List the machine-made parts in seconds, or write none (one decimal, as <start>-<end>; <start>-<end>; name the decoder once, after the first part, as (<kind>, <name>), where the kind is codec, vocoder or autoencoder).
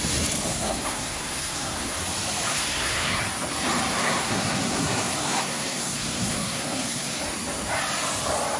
0.5-2.0 (codec, SNAC); 2.5-3.2; 3.9-7.2